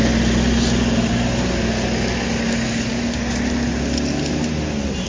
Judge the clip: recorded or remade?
recorded